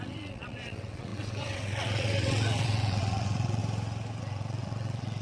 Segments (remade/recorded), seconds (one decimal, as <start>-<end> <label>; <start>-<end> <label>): 0.0-3.6 remade; 3.6-4.2 recorded; 4.2-5.2 remade